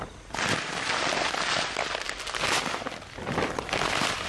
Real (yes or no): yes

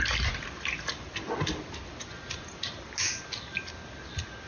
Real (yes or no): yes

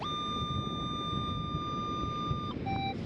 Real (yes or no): yes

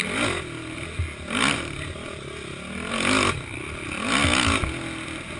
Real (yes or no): yes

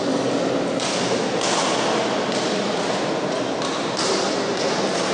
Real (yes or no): yes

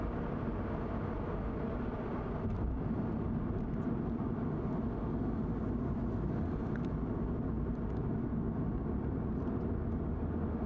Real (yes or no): yes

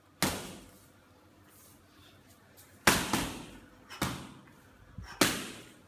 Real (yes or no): yes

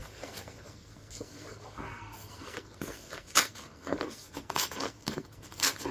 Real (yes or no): no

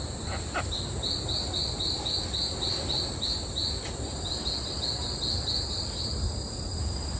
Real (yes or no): yes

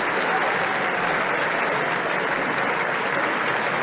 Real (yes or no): yes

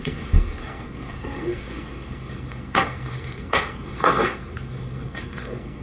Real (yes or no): no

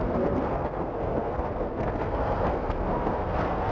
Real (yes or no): no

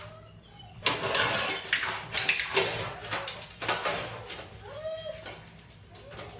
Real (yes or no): yes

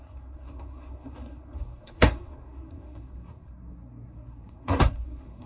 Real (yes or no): no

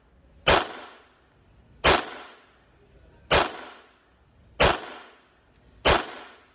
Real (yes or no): yes